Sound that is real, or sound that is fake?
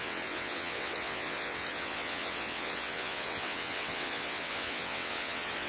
fake